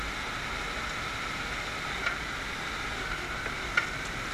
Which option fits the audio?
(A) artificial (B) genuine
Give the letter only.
B